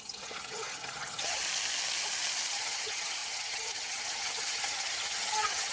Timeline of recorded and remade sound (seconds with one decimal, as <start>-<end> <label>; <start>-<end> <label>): 0.0-1.4 remade; 1.4-2.5 recorded; 2.5-5.7 remade

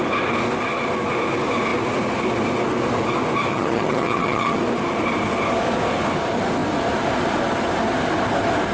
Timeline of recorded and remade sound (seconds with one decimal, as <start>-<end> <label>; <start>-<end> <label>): 0.0-3.5 recorded; 3.5-4.6 remade; 4.6-8.7 recorded

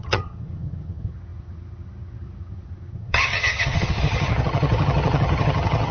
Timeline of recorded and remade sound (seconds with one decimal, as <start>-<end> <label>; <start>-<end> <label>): 0.0-5.9 remade